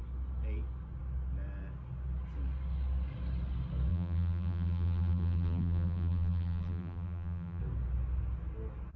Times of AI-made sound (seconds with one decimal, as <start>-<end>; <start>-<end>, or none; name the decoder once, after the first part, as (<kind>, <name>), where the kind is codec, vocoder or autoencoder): 3.9-7.6 (vocoder, BigVGAN v2)